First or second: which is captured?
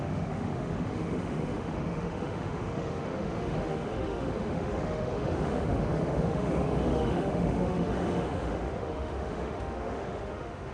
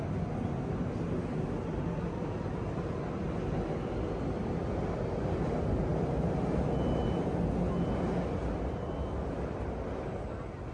second